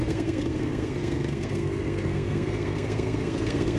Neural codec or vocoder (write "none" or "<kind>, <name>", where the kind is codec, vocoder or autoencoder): codec, SNAC